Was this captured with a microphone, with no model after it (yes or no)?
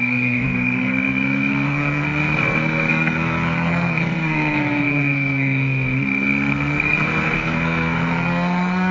no